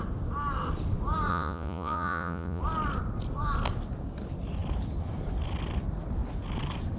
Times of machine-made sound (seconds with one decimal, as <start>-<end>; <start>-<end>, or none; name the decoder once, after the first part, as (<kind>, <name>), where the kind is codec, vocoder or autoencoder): 1.3-2.6 (vocoder, Vocos)